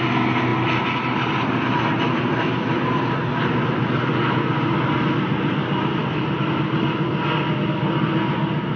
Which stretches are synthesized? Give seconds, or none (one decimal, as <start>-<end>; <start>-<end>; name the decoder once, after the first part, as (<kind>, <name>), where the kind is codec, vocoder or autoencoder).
none